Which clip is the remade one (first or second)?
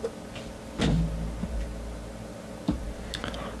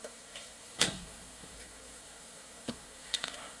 second